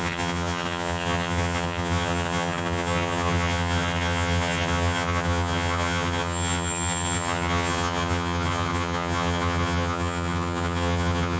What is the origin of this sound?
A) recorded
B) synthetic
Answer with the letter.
B